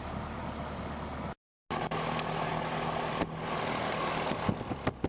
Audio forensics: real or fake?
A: real